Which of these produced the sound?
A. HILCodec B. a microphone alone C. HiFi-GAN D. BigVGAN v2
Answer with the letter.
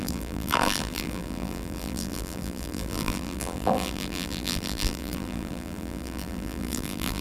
D